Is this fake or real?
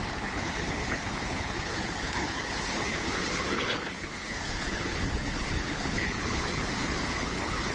fake